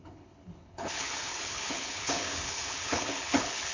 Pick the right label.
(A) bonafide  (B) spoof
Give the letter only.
B